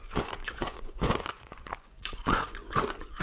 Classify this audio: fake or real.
fake